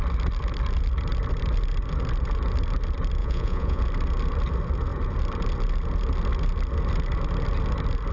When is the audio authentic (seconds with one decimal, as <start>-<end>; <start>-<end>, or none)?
0.0-3.2; 3.8-8.1